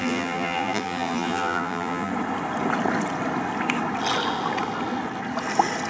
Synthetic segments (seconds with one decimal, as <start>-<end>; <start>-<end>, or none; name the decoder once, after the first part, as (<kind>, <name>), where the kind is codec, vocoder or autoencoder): 0.0-2.1 (vocoder, BigVGAN v2)